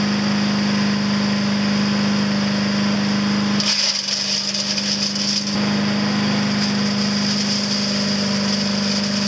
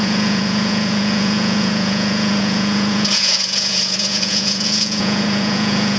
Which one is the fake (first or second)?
second